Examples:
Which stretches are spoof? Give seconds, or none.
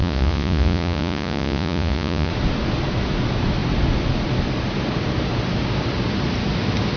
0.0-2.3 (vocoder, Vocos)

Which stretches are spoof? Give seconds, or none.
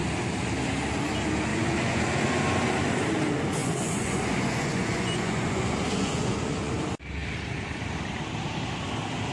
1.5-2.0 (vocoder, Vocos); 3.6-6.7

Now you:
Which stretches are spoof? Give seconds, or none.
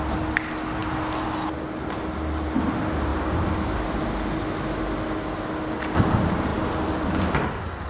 none